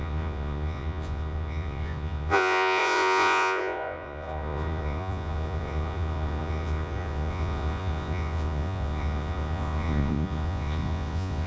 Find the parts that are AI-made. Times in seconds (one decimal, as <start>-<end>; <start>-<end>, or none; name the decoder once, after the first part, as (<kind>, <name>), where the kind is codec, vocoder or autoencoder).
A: 0.0-11.5 (vocoder, Vocos)